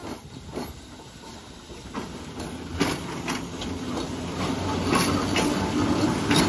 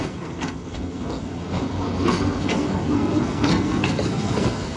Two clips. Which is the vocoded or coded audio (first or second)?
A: second